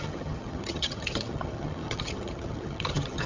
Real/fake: fake